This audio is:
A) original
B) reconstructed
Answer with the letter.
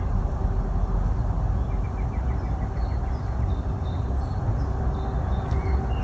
A